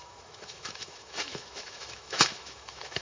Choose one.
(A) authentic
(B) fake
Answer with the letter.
B